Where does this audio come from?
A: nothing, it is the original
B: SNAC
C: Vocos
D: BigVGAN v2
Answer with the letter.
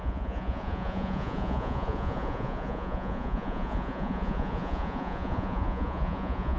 C